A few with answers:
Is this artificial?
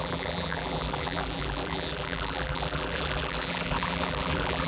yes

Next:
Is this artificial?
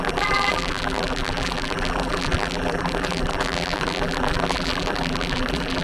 yes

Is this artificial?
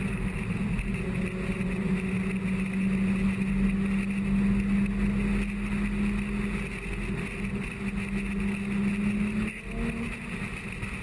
no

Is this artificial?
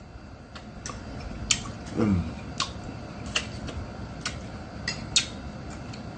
no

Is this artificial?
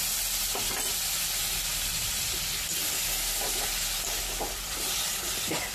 no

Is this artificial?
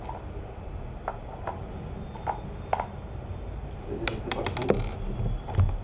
no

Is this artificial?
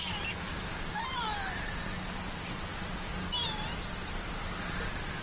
no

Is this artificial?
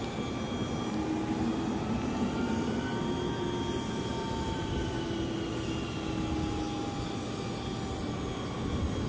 no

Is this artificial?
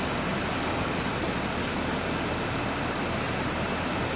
yes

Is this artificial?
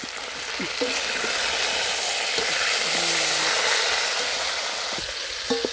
no